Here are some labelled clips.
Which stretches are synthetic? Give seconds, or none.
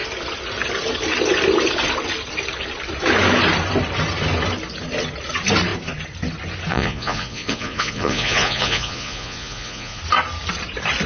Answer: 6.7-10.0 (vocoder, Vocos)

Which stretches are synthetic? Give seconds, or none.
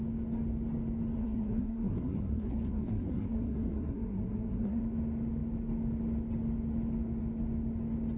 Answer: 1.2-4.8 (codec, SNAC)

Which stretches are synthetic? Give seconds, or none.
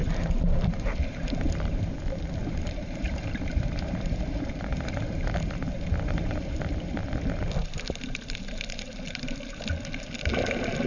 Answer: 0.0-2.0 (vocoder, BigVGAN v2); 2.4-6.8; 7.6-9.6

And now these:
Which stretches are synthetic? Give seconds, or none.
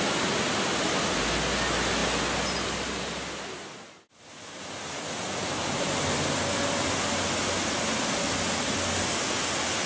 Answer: none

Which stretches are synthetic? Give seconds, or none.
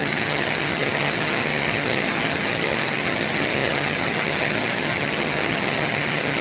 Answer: 0.0-6.4 (vocoder, HiFi-GAN)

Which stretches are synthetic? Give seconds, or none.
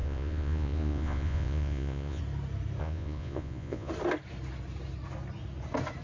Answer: 0.0-2.2 (vocoder, Vocos); 2.8-3.9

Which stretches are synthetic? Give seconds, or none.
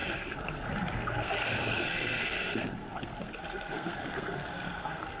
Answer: 0.0-5.2 (codec, SNAC)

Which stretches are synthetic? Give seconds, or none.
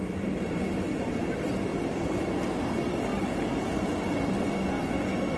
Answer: 1.7-2.2 (vocoder, BigVGAN v2); 3.1-4.3